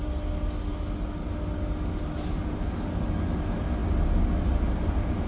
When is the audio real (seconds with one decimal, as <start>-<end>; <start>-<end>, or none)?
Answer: 0.0-5.3